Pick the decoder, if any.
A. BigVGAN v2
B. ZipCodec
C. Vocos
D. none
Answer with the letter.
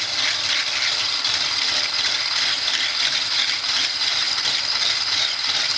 D